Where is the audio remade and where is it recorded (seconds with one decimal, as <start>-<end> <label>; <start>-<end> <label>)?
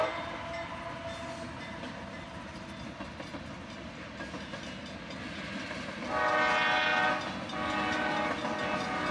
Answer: 0.0-9.1 recorded